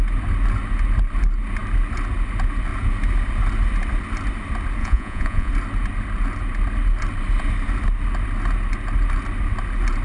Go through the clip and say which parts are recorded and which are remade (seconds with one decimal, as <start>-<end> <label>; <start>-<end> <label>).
0.0-4.8 recorded; 4.8-5.5 remade; 5.5-10.0 recorded